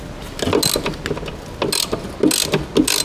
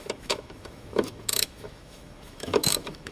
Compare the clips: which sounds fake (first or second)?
second